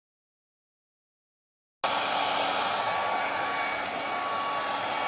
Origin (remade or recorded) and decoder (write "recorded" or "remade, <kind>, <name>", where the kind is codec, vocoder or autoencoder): recorded